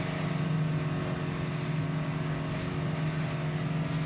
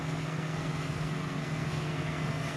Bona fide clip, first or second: first